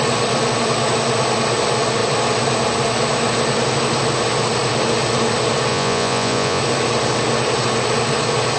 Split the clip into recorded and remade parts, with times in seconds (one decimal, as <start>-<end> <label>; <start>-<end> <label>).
0.0-5.7 recorded; 5.7-6.6 remade; 6.6-8.6 recorded